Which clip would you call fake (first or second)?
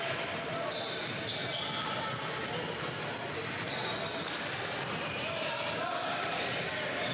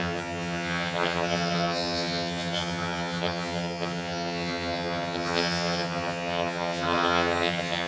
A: second